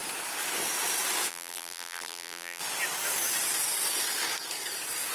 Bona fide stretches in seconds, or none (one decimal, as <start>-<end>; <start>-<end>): 0.0-1.3; 2.6-5.1